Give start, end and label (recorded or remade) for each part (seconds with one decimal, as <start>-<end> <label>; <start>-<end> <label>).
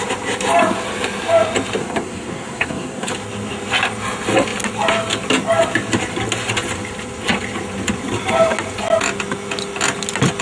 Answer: 0.0-1.8 recorded; 1.8-3.1 remade; 3.1-10.4 recorded